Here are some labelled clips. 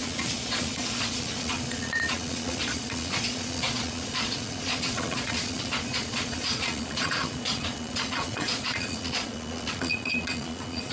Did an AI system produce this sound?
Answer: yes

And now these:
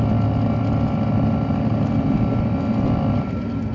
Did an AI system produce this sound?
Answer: no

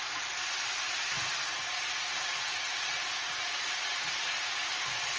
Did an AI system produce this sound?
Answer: no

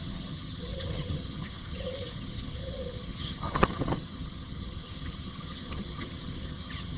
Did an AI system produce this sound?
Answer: yes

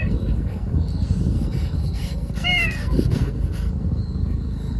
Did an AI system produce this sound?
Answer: yes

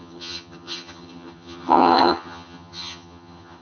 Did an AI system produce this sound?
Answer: yes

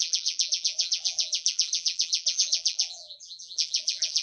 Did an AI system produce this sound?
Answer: yes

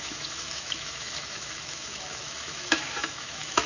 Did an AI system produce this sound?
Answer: yes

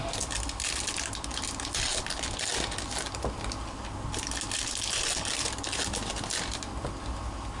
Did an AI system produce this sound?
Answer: no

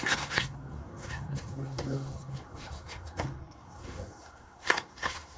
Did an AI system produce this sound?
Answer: yes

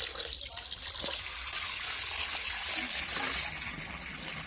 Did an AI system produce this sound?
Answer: no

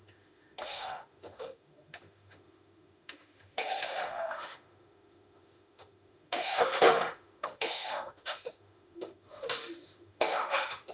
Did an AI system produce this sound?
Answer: yes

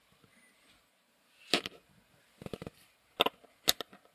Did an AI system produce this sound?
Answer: no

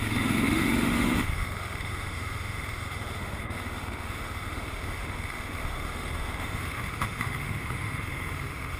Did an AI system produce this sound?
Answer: yes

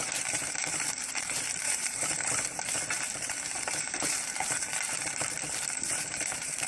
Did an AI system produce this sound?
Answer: yes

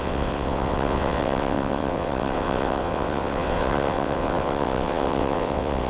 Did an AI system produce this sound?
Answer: yes